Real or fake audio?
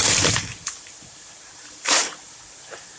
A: fake